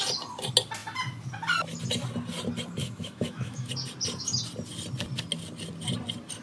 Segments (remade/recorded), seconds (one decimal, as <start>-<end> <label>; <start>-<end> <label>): 0.0-2.8 recorded; 2.8-3.7 remade; 3.7-6.4 recorded